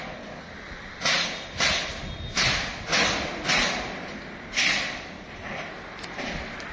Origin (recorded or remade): recorded